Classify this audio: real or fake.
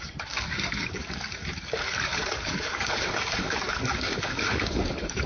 fake